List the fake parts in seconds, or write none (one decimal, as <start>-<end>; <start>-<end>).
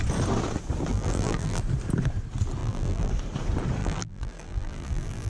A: 0.9-1.6; 2.6-3.1; 3.8-5.3